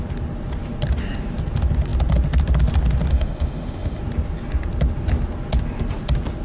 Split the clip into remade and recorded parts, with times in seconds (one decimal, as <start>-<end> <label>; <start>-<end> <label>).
0.0-3.1 recorded; 3.1-4.0 remade; 4.0-6.4 recorded